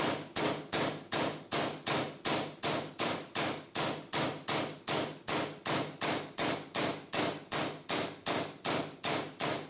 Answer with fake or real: real